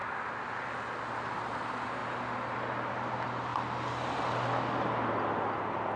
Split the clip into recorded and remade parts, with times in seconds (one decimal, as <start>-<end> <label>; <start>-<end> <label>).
0.0-6.0 recorded